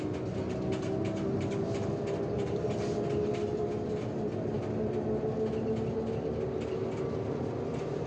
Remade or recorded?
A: recorded